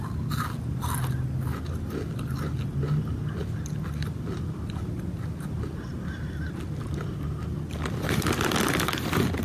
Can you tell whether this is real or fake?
real